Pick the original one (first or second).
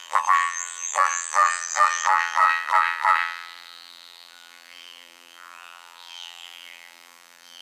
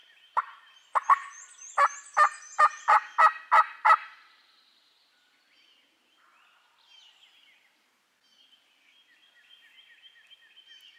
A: second